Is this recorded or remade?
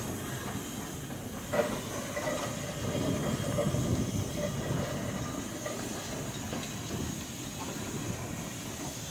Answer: recorded